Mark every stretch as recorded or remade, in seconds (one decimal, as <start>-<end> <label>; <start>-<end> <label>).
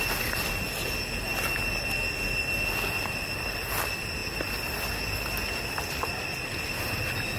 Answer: 0.0-7.4 recorded